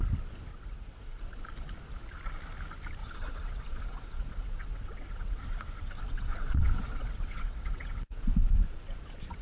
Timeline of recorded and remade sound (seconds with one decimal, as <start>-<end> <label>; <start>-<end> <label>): 0.0-0.5 recorded; 0.5-1.2 remade; 1.2-3.0 recorded; 3.0-8.3 remade; 8.3-9.4 recorded